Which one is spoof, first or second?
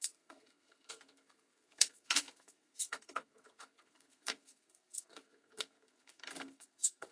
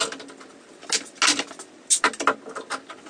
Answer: first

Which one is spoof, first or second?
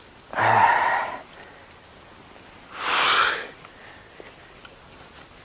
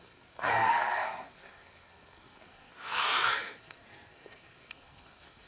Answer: second